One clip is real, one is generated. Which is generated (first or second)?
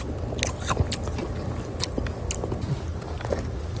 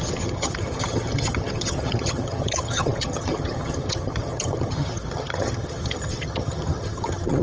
second